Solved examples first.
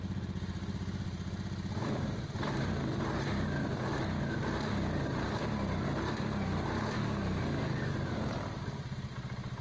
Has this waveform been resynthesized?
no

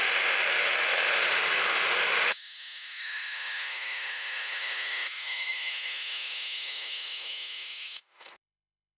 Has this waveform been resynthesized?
yes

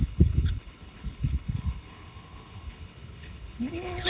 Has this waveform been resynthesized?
yes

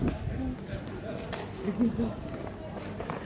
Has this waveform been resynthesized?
no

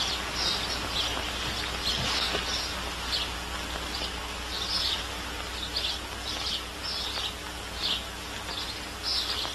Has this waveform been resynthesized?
no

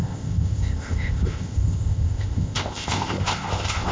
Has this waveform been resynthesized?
yes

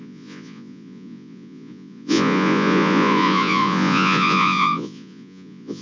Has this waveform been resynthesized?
yes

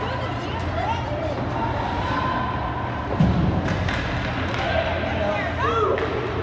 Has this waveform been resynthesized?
no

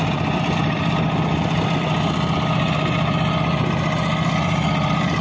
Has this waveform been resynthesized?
yes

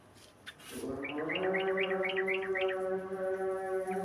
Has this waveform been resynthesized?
no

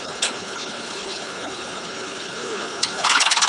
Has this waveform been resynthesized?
yes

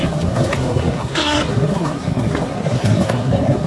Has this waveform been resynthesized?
yes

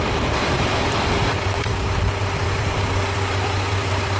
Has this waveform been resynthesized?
yes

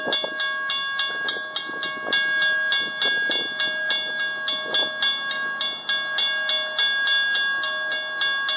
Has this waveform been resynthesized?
no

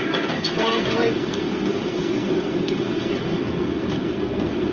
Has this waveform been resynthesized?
yes